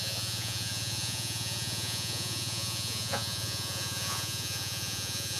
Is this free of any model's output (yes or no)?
no